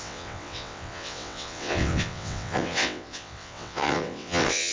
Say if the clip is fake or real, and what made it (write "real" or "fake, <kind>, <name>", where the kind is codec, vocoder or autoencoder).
fake, vocoder, WaveNeXt